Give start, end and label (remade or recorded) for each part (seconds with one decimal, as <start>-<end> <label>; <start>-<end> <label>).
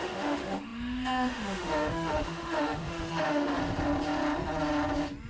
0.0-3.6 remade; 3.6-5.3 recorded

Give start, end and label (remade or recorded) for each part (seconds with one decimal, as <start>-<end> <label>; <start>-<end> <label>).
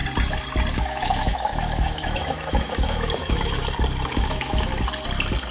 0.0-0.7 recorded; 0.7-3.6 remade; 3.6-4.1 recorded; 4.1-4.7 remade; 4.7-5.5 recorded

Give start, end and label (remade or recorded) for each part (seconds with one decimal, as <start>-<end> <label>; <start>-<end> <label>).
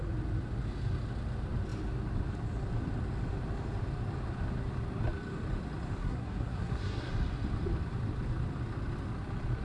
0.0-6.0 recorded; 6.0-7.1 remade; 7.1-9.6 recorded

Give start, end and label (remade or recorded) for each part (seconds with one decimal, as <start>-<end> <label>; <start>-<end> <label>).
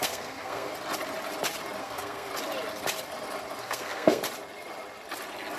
0.0-0.7 remade; 0.7-1.8 recorded; 1.8-2.3 remade; 2.3-3.6 recorded; 3.6-4.2 remade; 4.2-5.6 recorded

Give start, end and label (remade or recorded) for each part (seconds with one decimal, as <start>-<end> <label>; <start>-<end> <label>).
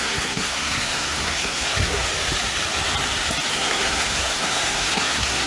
0.0-2.1 remade; 2.1-3.5 recorded; 3.5-5.5 remade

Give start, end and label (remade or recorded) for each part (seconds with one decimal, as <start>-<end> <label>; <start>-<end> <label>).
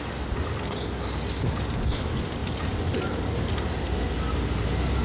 0.0-5.0 recorded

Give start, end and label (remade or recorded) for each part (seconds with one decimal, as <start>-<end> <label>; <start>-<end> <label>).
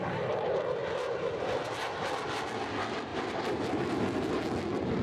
0.0-0.8 recorded; 0.8-1.9 remade; 1.9-3.1 recorded; 3.1-4.3 remade; 4.3-5.0 recorded